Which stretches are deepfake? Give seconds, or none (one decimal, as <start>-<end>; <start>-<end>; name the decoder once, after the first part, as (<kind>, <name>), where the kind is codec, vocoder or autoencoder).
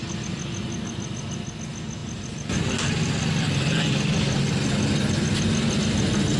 none